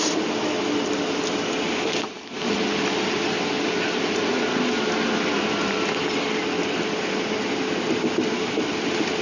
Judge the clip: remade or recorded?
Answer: recorded